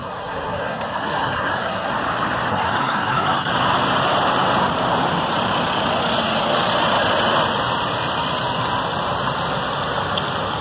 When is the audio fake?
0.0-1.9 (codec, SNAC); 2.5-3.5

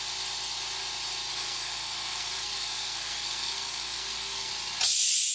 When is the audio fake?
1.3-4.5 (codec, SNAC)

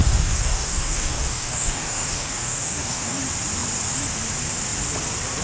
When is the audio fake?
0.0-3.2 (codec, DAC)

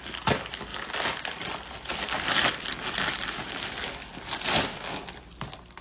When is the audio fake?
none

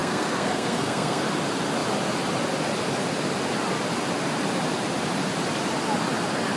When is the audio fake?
0.0-1.2 (codec, SNAC)

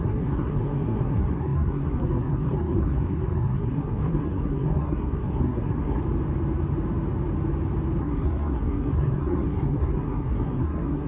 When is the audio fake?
0.0-6.0 (codec, SNAC); 8.0-11.1

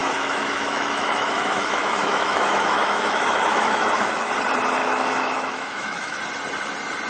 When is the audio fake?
0.0-4.3 (autoencoder, DAC-VAE); 4.8-6.2